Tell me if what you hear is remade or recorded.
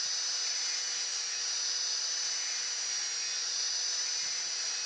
recorded